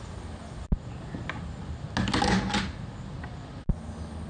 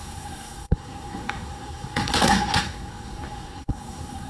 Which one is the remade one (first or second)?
second